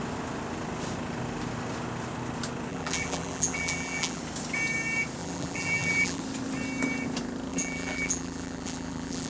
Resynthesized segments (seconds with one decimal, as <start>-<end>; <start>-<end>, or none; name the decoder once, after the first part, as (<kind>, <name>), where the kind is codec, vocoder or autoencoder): 2.7-4.2 (vocoder, BigVGAN v2); 5.2-6.2; 7.5-9.3